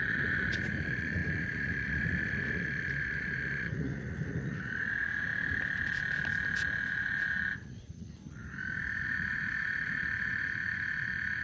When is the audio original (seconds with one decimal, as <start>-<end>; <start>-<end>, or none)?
5.3-6.8; 8.4-9.0

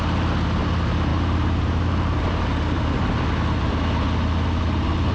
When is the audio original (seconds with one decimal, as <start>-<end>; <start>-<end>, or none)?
0.0-5.1